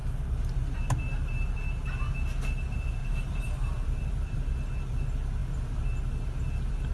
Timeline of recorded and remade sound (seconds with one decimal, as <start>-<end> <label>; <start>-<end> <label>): 0.0-3.0 recorded; 3.0-4.3 remade; 4.3-6.9 recorded